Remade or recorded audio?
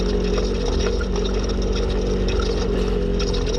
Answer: recorded